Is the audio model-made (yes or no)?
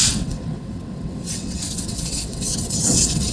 yes